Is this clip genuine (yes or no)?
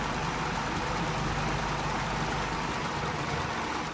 yes